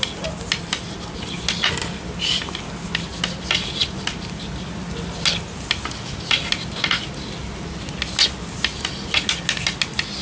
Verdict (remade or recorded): recorded